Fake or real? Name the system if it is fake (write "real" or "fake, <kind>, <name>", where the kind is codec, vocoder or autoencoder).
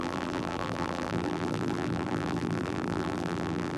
fake, vocoder, BigVGAN v2